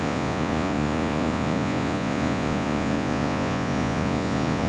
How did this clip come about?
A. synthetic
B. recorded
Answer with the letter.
A